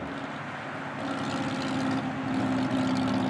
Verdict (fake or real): real